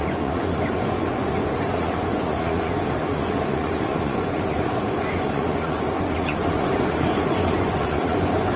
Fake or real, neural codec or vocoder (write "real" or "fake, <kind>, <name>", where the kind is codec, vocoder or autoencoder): fake, vocoder, Vocos